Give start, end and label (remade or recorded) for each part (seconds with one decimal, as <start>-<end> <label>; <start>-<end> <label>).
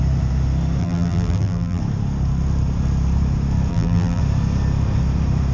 0.0-0.8 recorded; 0.8-1.8 remade; 1.8-3.7 recorded; 3.7-4.2 remade; 4.2-5.5 recorded